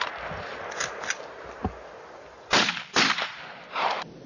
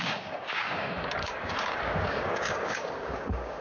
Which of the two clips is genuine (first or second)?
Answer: first